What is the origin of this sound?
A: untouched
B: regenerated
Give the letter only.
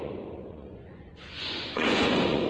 B